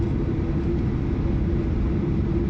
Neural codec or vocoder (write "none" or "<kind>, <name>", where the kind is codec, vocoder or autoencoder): none